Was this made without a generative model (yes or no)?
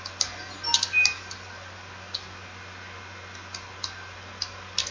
yes